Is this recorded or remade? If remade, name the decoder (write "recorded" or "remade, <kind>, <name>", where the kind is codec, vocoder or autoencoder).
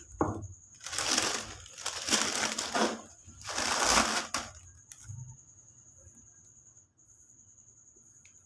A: recorded